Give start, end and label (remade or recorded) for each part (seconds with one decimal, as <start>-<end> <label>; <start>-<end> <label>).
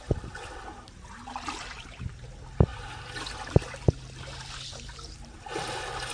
0.0-6.1 recorded